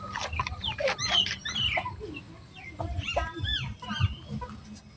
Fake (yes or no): no